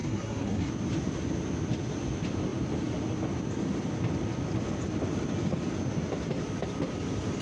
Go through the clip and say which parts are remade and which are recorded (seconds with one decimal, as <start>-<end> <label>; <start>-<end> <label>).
0.0-0.7 remade; 0.7-7.4 recorded